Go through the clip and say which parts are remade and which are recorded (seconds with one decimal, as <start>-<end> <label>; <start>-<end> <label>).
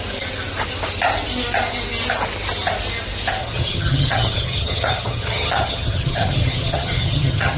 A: 0.0-3.4 recorded; 3.4-7.6 remade